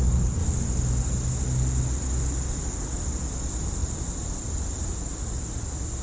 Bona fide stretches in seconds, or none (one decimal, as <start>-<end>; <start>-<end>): 0.0-6.0